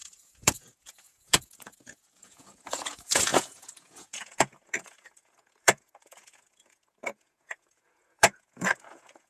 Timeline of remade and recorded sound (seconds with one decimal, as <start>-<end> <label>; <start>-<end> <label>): 0.0-9.3 remade